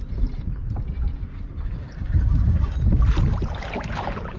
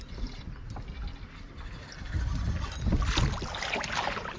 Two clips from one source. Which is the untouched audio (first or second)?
second